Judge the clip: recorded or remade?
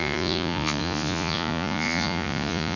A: remade